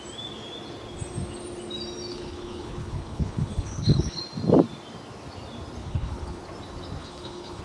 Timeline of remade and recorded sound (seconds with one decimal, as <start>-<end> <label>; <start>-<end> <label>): 0.0-2.1 recorded; 2.1-4.2 remade; 4.2-5.8 recorded; 5.8-6.4 remade; 6.4-7.0 recorded; 7.0-7.6 remade